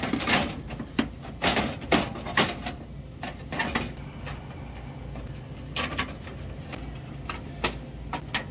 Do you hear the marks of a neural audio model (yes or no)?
no